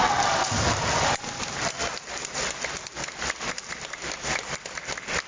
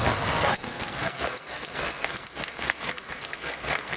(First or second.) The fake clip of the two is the second